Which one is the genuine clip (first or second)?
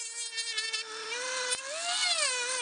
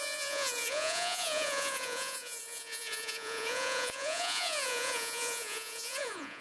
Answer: first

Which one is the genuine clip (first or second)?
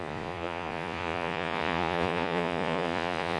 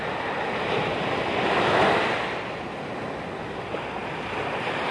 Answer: second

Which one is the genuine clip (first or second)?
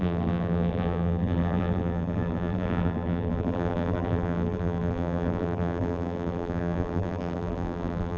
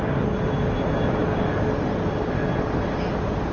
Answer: second